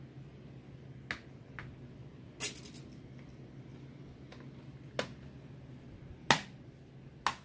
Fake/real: real